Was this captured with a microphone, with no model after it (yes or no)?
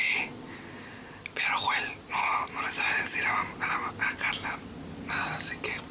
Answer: yes